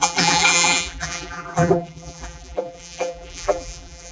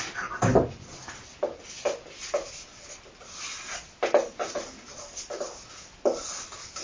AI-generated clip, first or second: first